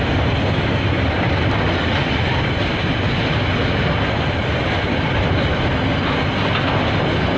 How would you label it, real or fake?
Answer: real